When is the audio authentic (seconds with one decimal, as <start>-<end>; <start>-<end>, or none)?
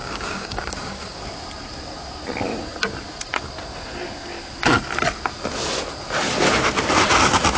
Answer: 1.2-7.6